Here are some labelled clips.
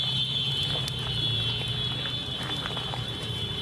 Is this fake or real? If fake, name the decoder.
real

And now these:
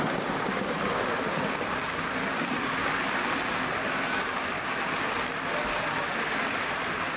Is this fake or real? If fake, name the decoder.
real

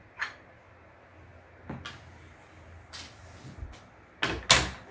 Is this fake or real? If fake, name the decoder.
real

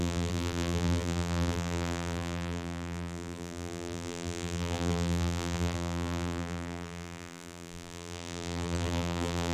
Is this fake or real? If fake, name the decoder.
fake, vocoder, BigVGAN v2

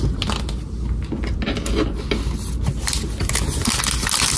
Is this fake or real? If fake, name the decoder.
real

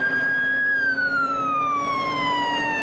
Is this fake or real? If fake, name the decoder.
fake, vocoder, BigVGAN v2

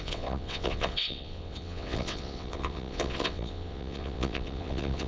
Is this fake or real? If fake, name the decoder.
fake, vocoder, WaveNeXt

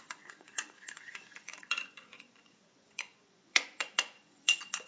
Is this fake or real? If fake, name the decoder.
fake, vocoder, Vocos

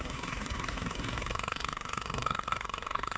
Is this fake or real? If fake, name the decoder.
fake, codec, SNAC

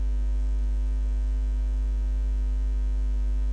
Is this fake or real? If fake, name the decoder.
real